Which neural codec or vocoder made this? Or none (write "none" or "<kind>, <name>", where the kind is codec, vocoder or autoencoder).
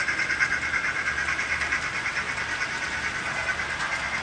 none